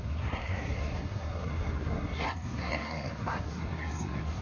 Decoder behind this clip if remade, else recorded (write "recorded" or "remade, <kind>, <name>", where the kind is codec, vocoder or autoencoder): remade, codec, SNAC